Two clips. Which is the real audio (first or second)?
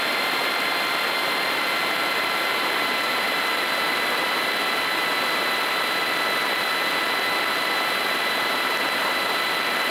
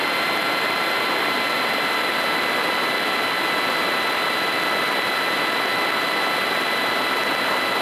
second